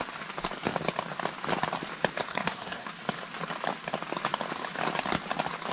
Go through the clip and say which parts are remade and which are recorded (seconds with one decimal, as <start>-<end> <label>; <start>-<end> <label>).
0.0-2.3 recorded; 2.3-2.9 remade; 2.9-5.7 recorded